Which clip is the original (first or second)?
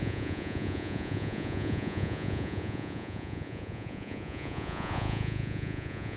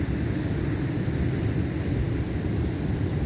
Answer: second